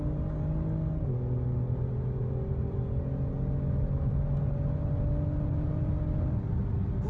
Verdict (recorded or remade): recorded